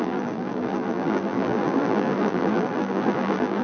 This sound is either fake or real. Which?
fake